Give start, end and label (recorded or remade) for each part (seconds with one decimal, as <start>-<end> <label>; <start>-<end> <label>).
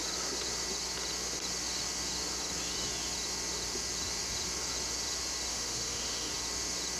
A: 0.0-5.5 recorded; 5.5-6.3 remade; 6.3-7.0 recorded